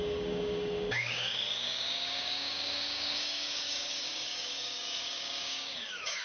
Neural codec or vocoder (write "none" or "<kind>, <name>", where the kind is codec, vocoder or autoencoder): codec, DAC